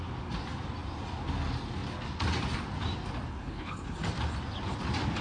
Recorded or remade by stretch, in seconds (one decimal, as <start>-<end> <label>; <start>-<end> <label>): 0.0-3.3 recorded; 3.3-4.0 remade; 4.0-5.2 recorded